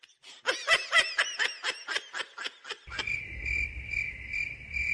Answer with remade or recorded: recorded